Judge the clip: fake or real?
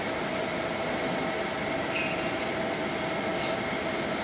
real